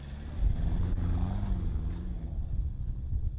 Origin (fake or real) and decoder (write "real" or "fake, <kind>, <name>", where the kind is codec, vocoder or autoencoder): real